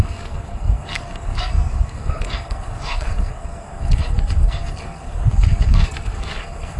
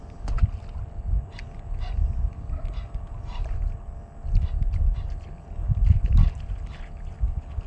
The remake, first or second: first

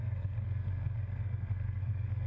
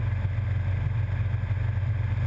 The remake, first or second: first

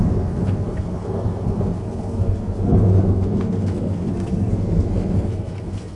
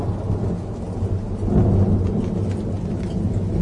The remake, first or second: first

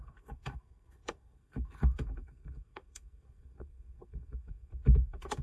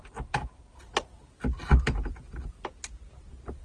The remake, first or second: first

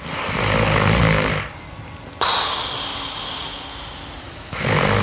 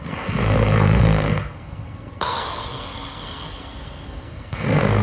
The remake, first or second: second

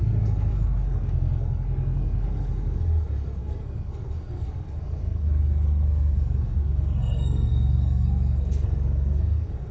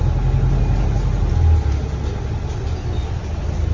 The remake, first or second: first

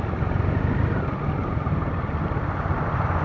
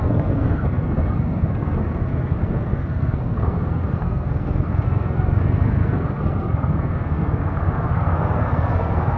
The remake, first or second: second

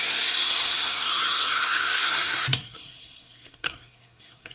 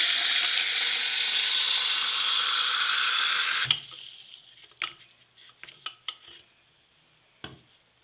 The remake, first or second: first